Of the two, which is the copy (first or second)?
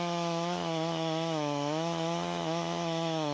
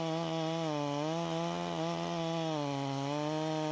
first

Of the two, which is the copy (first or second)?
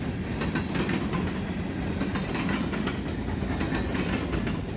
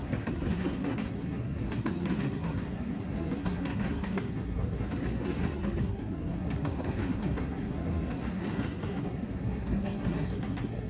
second